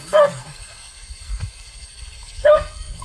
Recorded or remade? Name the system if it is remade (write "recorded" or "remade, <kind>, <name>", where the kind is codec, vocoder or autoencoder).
remade, codec, SNAC